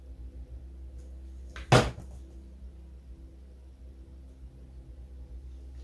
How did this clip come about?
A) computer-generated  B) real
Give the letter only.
B